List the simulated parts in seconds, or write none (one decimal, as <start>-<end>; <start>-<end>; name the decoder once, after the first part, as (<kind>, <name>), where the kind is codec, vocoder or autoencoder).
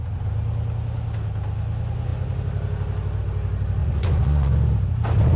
3.8-4.5 (vocoder, Vocos)